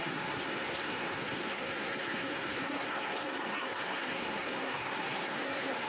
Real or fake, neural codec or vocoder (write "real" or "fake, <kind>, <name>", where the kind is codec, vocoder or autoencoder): fake, codec, SNAC